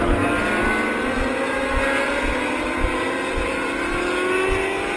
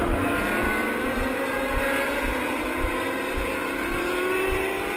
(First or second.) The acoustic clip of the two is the first